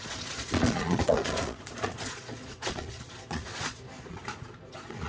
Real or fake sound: fake